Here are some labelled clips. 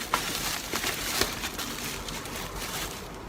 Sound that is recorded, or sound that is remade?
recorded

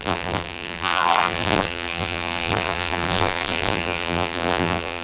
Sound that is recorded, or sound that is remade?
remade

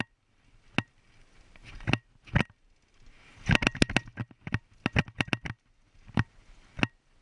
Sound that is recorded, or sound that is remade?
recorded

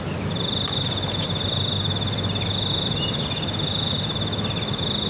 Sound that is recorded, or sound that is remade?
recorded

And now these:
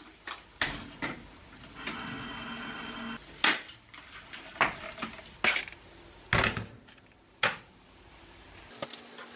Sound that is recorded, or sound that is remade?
recorded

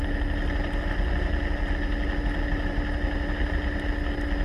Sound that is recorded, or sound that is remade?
recorded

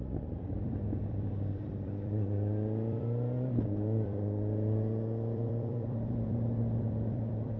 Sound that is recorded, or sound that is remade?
remade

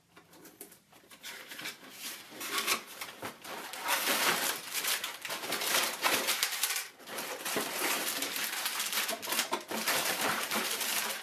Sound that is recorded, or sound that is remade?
remade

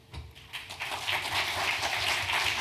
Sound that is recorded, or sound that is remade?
recorded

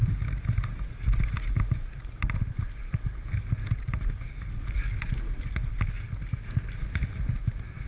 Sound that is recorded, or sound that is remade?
recorded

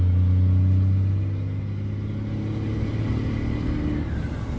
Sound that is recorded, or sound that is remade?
recorded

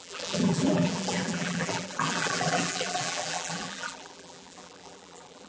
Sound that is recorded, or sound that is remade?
remade